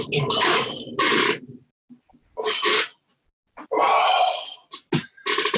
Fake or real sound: real